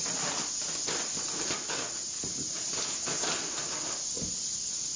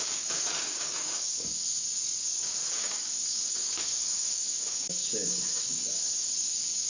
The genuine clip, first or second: first